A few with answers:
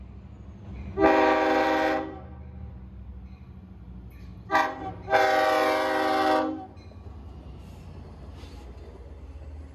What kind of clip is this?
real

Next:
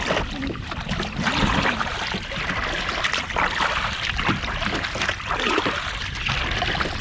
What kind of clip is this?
real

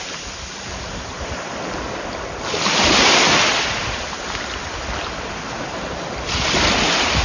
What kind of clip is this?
real